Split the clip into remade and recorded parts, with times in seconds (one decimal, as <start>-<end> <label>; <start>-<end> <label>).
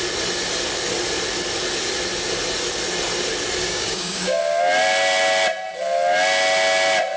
0.0-3.7 recorded; 3.7-4.4 remade; 4.4-7.2 recorded